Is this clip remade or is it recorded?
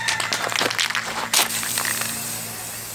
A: recorded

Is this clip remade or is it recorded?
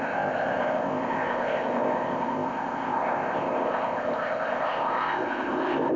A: remade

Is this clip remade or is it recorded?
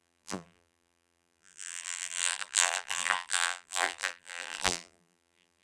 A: remade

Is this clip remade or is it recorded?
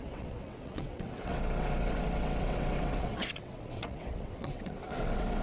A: remade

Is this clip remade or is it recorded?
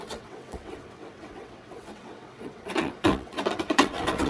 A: remade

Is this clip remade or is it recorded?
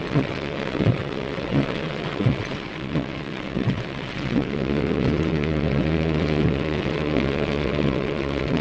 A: remade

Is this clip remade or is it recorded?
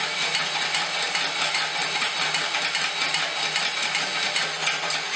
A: recorded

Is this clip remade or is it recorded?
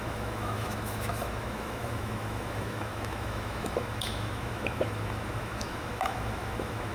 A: remade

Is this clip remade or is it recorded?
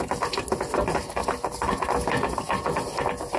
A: recorded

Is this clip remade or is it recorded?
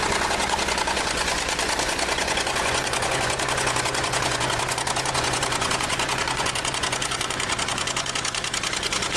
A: remade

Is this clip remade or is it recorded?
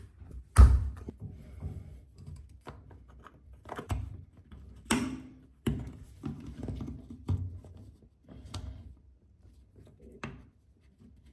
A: remade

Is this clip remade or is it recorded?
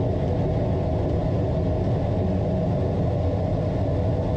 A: recorded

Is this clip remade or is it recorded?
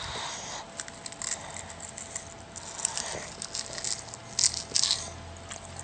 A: recorded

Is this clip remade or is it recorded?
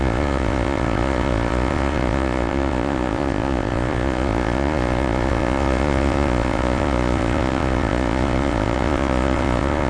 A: remade